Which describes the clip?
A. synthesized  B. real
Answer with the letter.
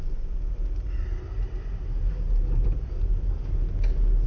B